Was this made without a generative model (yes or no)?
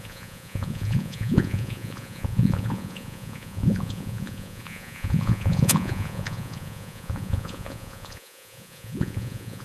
no